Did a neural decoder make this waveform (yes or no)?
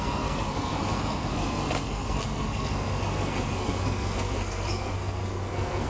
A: yes